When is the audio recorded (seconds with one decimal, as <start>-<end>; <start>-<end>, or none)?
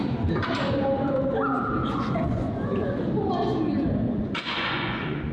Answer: 0.0-1.8; 3.1-4.0